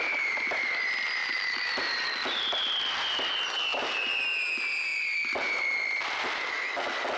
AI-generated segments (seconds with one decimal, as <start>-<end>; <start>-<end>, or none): 1.2-1.9; 3.7-4.2